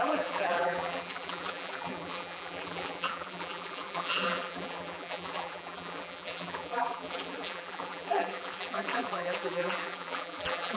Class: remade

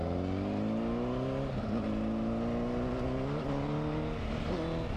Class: recorded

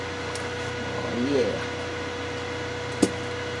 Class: recorded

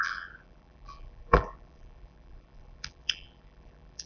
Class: remade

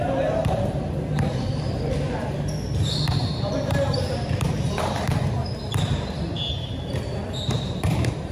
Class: remade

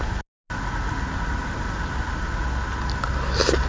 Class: recorded